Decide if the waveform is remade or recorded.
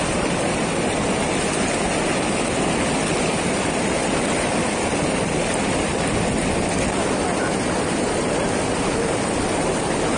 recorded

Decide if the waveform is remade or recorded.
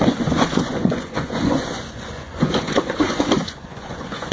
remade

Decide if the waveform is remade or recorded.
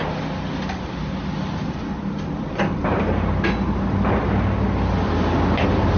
recorded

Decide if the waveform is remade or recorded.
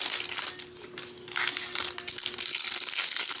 recorded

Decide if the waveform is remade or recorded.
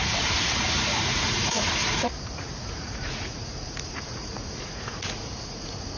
remade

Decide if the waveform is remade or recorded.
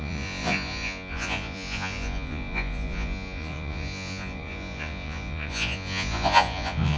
remade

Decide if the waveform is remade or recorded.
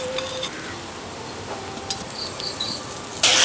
recorded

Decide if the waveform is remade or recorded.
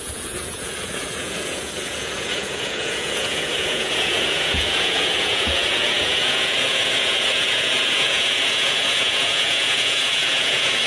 remade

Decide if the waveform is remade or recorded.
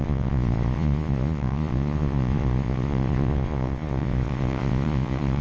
remade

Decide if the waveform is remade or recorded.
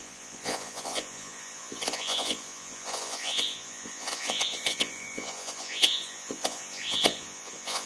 remade